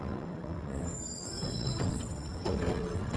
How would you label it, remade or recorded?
remade